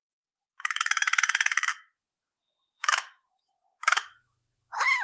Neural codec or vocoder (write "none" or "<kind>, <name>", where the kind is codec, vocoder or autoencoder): autoencoder, DAC-VAE